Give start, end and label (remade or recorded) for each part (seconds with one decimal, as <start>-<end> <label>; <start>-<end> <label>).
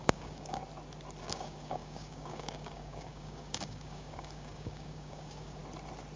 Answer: 0.0-0.6 remade; 0.6-1.2 recorded; 1.2-5.6 remade; 5.6-6.2 recorded